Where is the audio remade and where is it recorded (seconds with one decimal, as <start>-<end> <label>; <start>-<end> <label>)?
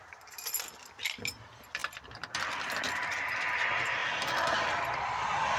0.0-5.6 remade